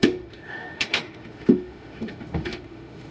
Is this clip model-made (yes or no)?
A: yes